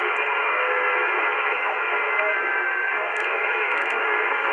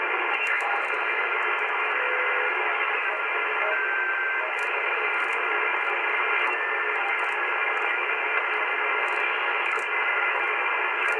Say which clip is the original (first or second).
second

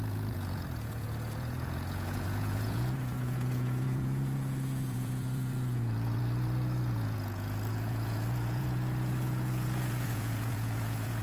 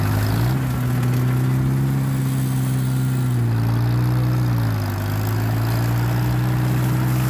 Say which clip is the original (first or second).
second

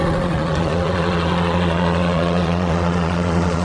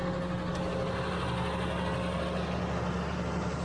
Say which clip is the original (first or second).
second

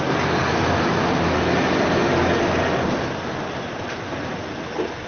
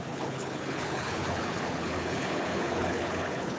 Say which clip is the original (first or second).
first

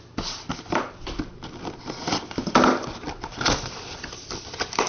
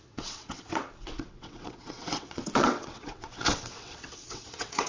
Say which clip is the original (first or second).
first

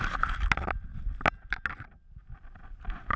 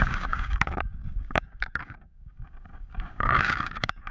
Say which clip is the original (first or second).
first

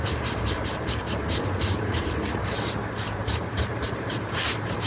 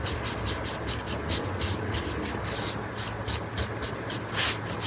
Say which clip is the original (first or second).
second